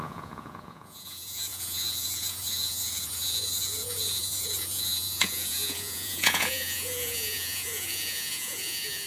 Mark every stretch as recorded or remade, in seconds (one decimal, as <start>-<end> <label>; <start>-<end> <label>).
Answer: 0.0-9.1 remade